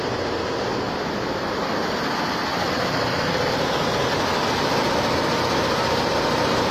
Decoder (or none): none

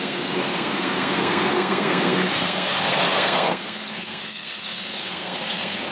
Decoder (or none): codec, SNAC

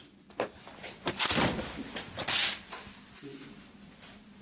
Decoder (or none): none